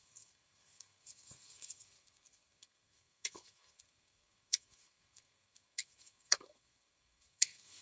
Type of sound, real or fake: fake